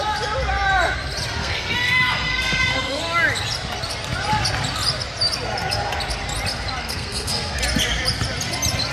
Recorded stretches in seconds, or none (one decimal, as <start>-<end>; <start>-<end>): 0.0-1.4; 3.0-6.8; 7.6-8.9